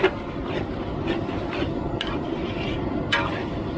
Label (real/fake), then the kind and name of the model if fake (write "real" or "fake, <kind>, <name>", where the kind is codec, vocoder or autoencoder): real